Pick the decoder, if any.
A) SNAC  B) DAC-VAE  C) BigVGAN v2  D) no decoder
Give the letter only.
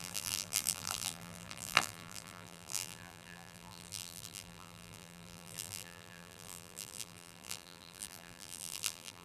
C